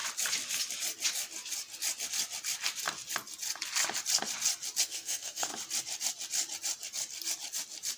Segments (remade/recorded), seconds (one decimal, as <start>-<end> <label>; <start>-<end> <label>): 0.0-4.8 recorded; 4.8-5.5 remade; 5.5-8.0 recorded